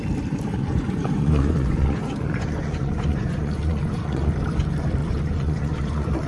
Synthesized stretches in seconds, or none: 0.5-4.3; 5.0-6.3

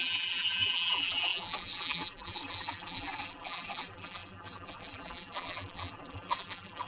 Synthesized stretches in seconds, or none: 0.0-6.9

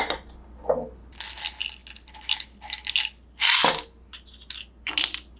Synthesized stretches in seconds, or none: none

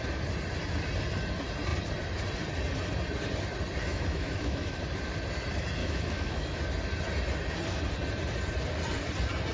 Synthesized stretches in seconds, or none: 3.9-4.8; 5.8-6.6